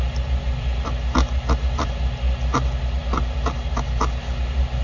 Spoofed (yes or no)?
no